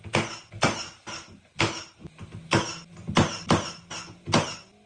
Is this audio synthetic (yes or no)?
no